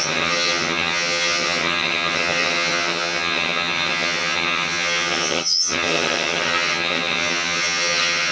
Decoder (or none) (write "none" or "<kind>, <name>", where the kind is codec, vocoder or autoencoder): vocoder, HiFi-GAN